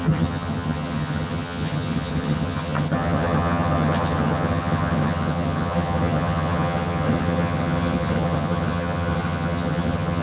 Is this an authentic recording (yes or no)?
no